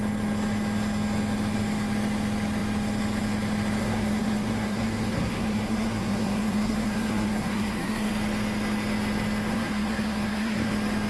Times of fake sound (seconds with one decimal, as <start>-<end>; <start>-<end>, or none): 3.8-8.1; 9.5-10.7